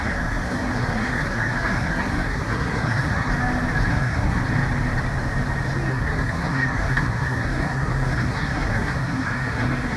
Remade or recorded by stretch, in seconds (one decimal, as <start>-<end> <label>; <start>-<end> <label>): 0.0-3.3 remade; 3.3-3.9 recorded; 3.9-4.4 remade; 4.4-5.9 recorded; 5.9-10.0 remade